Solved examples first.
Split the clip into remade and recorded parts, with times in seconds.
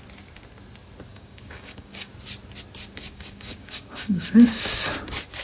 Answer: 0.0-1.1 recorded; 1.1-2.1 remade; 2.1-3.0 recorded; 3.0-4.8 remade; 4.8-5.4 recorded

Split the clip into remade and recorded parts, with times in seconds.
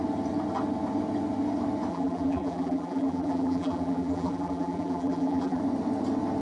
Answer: 0.0-1.9 recorded; 1.9-5.6 remade; 5.6-6.4 recorded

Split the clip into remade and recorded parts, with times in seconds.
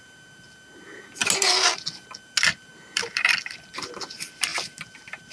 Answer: 0.0-5.3 recorded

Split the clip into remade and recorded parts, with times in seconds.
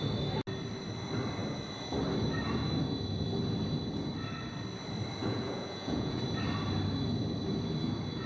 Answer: 0.0-5.2 recorded; 5.2-6.2 remade; 6.2-8.3 recorded